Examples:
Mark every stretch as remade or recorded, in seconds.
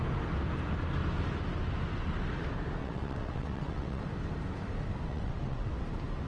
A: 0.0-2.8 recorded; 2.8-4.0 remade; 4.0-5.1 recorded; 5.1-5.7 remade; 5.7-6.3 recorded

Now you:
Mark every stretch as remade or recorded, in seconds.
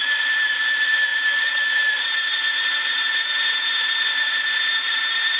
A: 0.0-5.4 recorded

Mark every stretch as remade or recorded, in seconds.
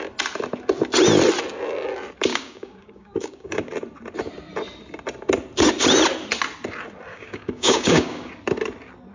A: 0.0-2.3 recorded; 2.3-3.7 remade; 3.7-7.1 recorded; 7.1-8.3 remade; 8.3-9.1 recorded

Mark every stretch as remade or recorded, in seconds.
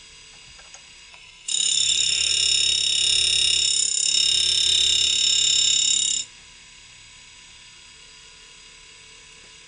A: 0.0-1.1 recorded; 1.1-2.3 remade; 2.3-9.7 recorded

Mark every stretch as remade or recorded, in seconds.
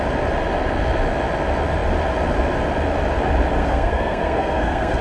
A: 0.0-3.6 recorded; 3.6-5.0 remade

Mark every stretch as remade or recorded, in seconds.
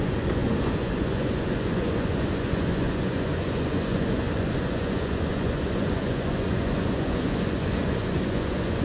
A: 0.0-8.8 remade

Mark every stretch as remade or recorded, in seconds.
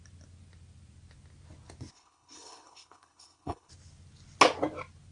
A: 0.0-1.9 recorded; 1.9-3.7 remade; 3.7-5.1 recorded